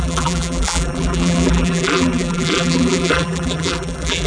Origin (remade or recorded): remade